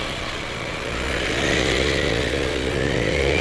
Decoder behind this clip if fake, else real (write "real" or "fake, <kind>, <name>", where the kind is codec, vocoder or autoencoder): fake, vocoder, Vocos